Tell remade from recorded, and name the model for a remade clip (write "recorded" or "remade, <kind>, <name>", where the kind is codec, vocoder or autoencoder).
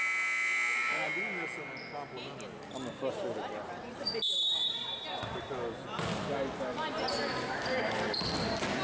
recorded